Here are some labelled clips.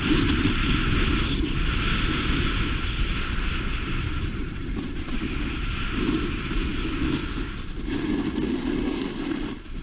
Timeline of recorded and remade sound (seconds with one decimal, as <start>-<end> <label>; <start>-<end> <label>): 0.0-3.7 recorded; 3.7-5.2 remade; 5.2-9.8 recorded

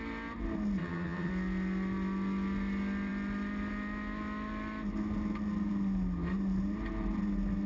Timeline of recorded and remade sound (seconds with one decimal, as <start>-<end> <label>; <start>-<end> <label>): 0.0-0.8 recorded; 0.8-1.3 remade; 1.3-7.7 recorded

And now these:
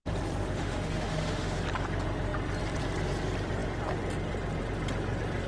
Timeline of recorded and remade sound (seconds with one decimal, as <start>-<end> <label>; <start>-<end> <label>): 0.0-0.4 recorded; 0.4-1.6 remade; 1.6-5.5 recorded

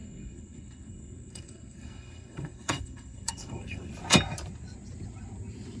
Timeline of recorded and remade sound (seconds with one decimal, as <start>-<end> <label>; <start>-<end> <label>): 0.0-3.9 remade; 3.9-5.8 recorded